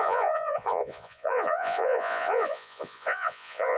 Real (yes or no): no